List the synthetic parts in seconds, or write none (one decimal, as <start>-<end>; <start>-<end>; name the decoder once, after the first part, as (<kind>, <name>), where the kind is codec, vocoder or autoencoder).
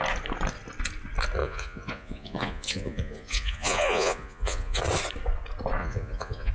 1.4-4.8 (vocoder, Vocos); 5.8-6.5